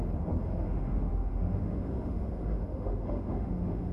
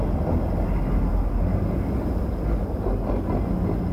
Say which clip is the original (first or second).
second